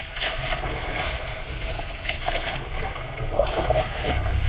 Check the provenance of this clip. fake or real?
fake